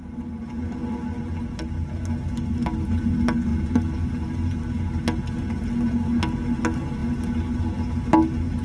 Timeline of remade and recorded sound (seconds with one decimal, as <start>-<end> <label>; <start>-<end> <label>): 0.0-8.6 recorded